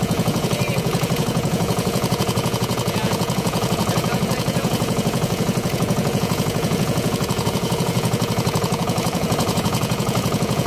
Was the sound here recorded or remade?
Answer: remade